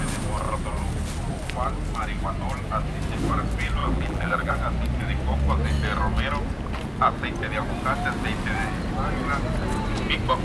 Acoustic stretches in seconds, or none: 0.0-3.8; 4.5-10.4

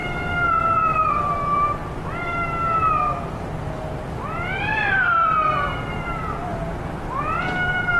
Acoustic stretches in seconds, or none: 0.0-0.6; 1.8-4.1

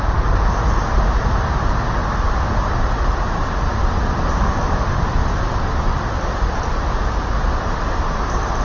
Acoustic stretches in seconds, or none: 0.0-2.0; 3.0-5.9; 7.3-8.6

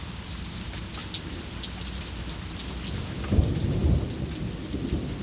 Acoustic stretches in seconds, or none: 0.0-5.2

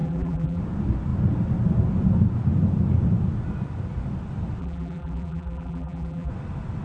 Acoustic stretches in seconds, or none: 0.6-4.6; 6.3-6.8

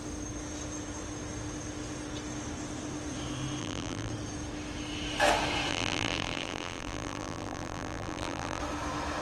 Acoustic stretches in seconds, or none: 0.0-3.6; 4.1-5.7; 8.6-9.2

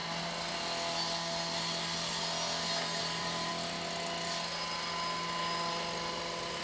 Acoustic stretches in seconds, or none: 0.0-3.0; 3.5-6.6